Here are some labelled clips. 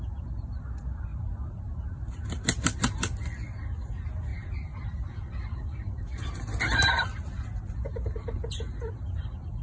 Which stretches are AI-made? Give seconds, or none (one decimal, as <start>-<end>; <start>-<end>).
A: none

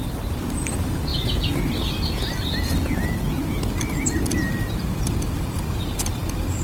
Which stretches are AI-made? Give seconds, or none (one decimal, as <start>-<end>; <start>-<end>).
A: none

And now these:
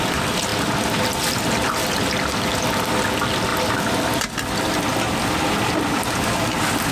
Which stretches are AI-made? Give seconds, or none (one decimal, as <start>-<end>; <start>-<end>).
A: none